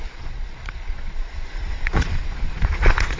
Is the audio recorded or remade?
remade